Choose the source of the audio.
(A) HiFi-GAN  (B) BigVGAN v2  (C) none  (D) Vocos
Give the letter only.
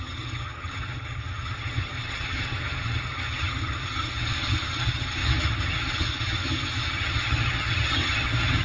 A